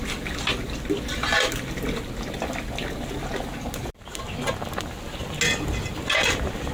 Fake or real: real